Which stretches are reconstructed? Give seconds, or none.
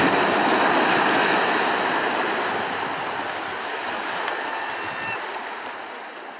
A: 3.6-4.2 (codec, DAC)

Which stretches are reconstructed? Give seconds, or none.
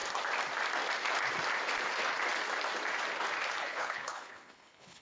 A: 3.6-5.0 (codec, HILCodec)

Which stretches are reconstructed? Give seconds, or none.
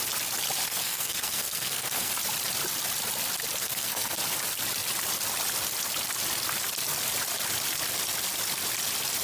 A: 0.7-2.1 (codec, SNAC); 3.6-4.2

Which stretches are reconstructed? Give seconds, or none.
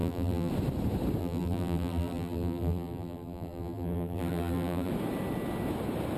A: 0.0-0.5 (vocoder, BigVGAN v2); 1.2-4.9